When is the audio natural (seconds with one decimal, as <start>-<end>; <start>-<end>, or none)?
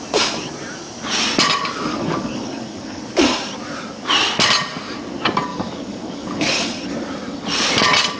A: 0.0-1.9; 3.0-5.5; 6.6-8.2